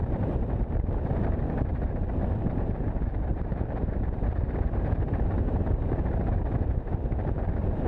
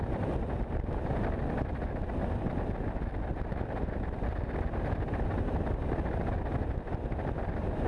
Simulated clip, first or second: first